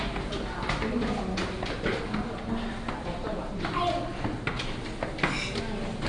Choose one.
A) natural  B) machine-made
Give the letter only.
A